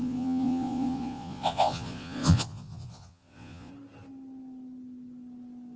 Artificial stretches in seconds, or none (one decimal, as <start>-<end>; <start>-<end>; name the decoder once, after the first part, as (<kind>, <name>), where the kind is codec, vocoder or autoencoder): 0.0-3.7 (vocoder, Vocos)